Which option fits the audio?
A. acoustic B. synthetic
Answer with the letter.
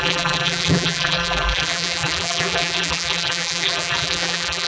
B